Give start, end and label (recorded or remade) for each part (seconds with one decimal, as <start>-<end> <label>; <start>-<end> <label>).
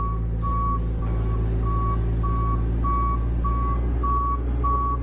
0.0-5.0 recorded